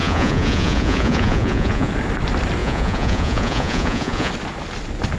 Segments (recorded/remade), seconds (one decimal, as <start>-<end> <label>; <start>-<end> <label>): 0.0-1.9 remade; 1.9-2.6 recorded; 2.6-4.3 remade; 4.3-5.2 recorded